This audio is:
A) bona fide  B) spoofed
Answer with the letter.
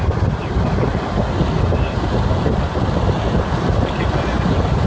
A